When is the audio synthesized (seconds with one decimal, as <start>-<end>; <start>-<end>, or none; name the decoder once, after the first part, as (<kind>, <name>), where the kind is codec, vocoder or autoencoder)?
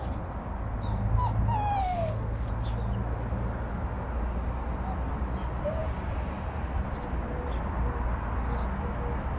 1.8-2.5 (autoencoder, DAC-VAE)